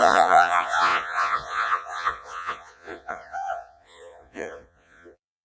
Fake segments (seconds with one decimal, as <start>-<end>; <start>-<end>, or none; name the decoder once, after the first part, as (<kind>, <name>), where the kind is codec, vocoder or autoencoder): 0.0-5.4 (vocoder, Vocos)

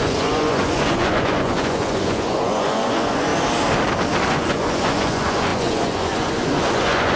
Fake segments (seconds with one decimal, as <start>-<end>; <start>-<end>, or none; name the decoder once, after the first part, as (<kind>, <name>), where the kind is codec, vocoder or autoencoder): 0.0-3.3 (vocoder, Vocos); 4.3-7.2

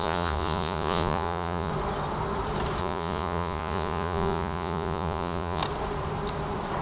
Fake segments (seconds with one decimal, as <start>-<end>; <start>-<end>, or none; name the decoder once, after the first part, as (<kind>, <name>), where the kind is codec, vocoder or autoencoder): 0.0-1.7 (vocoder, Vocos); 2.8-5.6

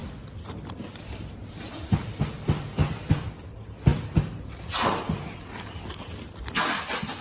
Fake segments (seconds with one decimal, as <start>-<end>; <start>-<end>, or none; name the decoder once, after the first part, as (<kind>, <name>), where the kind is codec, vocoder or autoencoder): none

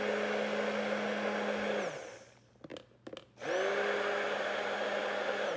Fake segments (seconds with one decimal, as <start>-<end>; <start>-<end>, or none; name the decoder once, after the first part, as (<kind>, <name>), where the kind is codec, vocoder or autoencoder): none